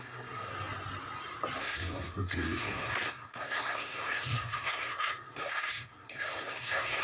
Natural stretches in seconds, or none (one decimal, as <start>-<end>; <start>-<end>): 0.5-1.6

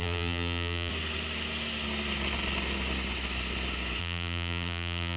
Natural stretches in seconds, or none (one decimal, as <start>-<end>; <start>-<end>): 0.9-4.0

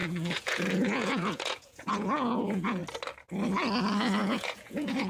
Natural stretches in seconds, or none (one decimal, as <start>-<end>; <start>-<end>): 2.8-4.2

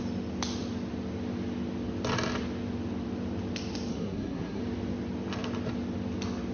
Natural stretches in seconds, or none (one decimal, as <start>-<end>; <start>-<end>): 0.0-3.9; 4.6-6.5